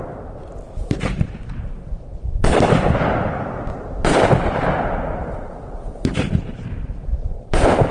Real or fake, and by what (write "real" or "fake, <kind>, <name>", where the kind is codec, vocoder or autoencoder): fake, vocoder, BigVGAN v2